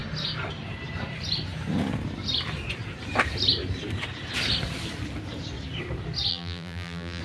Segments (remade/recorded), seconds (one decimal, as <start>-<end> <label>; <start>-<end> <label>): 0.0-6.3 recorded; 6.3-7.2 remade